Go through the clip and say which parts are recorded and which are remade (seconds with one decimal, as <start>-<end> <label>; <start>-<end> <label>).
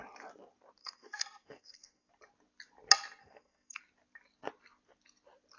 0.0-0.8 recorded; 0.8-2.1 remade; 2.1-3.2 recorded; 3.2-3.8 remade; 3.8-5.6 recorded